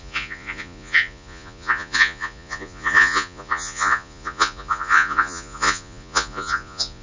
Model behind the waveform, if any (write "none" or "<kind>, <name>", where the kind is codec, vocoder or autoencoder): vocoder, Vocos